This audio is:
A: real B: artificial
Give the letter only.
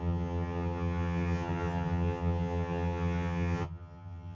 B